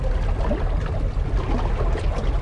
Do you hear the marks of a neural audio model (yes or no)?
no